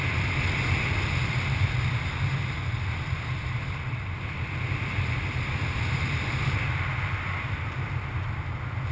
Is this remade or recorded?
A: recorded